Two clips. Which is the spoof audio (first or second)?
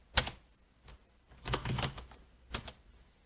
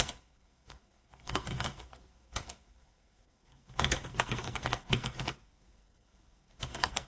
second